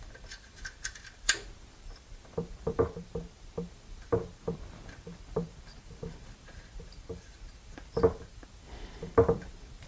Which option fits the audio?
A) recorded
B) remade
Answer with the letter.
B